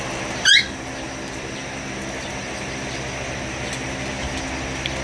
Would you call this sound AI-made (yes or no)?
no